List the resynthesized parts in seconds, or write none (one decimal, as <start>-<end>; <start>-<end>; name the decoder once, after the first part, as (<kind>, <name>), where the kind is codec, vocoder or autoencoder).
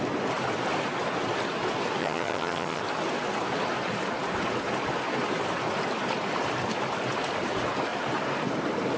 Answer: 2.0-2.8 (vocoder, HiFi-GAN)